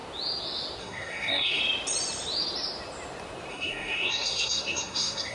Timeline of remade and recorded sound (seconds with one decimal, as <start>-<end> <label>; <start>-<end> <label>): 0.0-0.8 recorded; 0.8-1.6 remade; 1.6-3.5 recorded; 3.5-5.3 remade